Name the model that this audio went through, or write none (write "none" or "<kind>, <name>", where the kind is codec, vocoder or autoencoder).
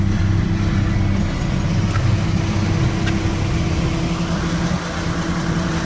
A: none